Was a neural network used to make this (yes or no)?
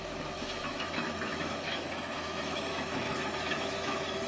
yes